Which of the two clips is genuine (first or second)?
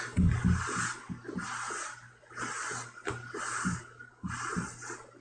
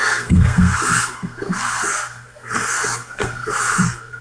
first